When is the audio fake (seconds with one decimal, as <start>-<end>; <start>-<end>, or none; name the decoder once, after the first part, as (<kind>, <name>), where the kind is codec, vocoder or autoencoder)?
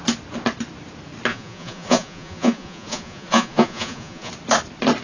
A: 1.3-4.3 (vocoder, Vocos)